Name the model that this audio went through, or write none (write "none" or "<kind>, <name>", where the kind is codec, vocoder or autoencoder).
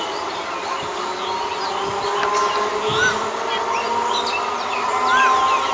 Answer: none